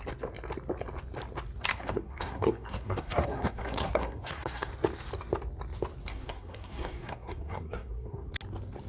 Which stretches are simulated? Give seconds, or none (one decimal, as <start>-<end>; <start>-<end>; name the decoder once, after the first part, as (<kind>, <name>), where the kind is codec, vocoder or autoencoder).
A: 1.7-4.7 (codec, SNAC); 6.1-8.3